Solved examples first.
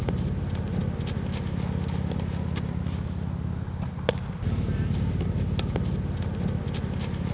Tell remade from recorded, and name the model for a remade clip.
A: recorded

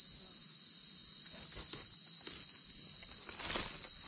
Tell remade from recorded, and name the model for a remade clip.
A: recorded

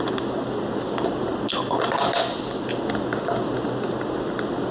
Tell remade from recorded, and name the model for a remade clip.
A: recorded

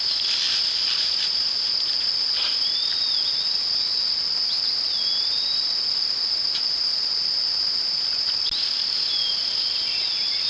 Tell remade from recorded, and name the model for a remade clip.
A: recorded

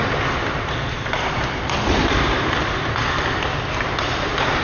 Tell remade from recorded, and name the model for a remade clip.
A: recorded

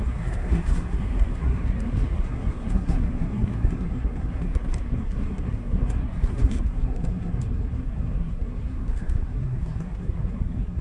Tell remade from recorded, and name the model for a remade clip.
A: remade, codec, SNAC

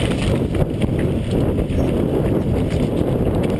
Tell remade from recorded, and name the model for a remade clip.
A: recorded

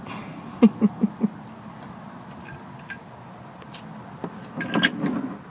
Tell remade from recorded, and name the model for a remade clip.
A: recorded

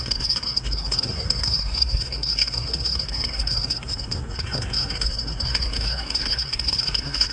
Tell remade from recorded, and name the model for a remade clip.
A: remade, codec, SNAC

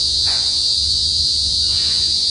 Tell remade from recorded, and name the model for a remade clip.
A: remade, vocoder, Vocos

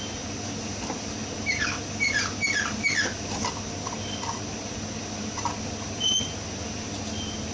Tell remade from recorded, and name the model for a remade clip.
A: recorded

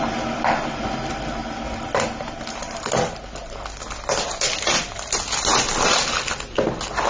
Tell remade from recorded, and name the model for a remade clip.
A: recorded